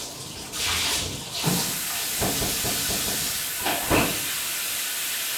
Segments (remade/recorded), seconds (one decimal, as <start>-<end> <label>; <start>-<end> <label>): 0.0-5.4 recorded

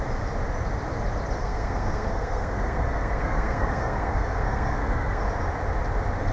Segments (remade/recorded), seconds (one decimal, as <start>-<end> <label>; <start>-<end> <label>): 0.0-1.4 recorded; 1.4-5.2 remade; 5.2-6.3 recorded

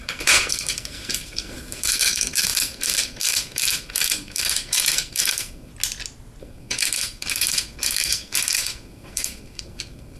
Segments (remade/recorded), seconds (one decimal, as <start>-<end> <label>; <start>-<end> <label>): 0.0-5.7 remade; 5.7-6.4 recorded; 6.4-10.2 remade